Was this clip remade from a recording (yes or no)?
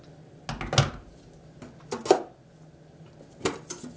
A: no